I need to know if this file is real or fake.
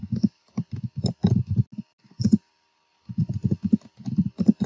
real